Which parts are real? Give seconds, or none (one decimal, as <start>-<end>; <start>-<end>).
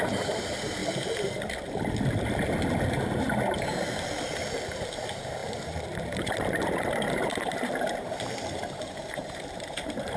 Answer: 0.8-4.8